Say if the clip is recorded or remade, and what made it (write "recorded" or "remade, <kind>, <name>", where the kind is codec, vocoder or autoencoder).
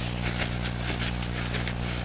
recorded